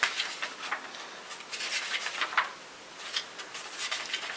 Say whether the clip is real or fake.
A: real